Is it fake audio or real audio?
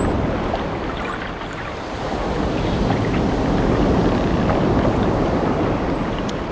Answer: real